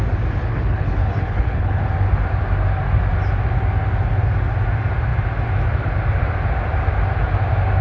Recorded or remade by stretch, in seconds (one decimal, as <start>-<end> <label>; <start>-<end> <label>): 0.0-0.4 recorded; 0.4-1.8 remade; 1.8-7.8 recorded